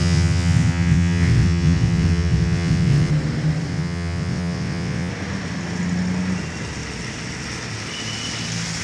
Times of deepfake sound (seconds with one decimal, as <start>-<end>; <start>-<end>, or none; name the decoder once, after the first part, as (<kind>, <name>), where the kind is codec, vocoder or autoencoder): 0.0-3.1 (vocoder, WaveNeXt); 3.7-5.1